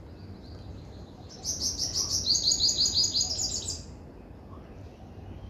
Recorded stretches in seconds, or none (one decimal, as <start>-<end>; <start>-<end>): 0.0-0.7; 2.5-5.5